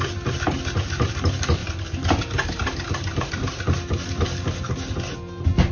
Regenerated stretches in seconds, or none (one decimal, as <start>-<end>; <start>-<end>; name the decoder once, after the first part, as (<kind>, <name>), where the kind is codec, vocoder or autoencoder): none